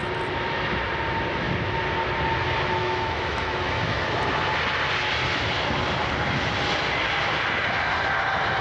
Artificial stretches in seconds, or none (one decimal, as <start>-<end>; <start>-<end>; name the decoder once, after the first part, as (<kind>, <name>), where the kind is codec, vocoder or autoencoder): 2.8-4.0 (autoencoder, DAC-VAE)